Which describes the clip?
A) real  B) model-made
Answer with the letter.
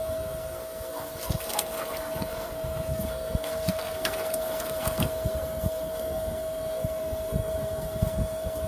B